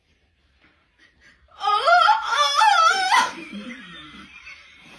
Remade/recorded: remade